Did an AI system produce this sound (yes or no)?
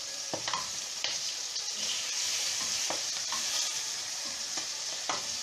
yes